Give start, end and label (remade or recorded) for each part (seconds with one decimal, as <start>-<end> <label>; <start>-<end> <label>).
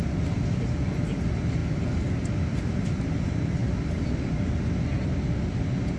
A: 0.0-6.0 recorded